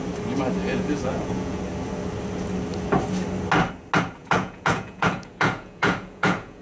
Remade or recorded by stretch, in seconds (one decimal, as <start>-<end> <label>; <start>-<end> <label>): 0.0-0.6 recorded; 0.6-1.6 remade; 1.6-4.2 recorded; 4.2-6.6 remade